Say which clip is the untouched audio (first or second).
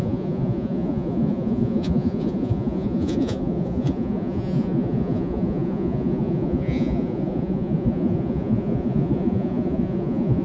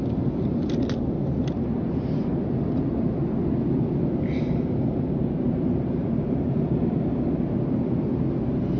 second